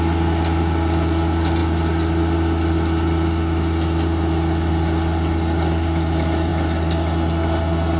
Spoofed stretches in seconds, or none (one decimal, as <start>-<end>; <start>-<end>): none